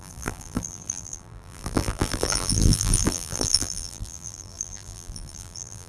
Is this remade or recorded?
remade